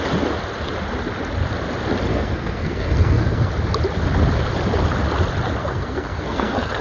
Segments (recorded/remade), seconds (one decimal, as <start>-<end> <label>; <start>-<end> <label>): 0.0-2.1 recorded; 2.1-3.5 remade; 3.5-5.6 recorded; 5.6-6.8 remade